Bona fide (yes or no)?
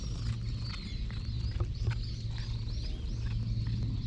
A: yes